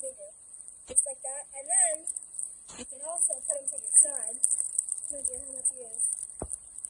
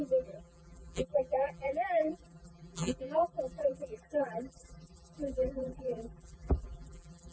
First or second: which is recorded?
first